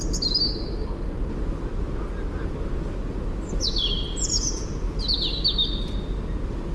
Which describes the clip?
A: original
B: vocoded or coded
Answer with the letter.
A